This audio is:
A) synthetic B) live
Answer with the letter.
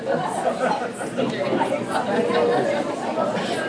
B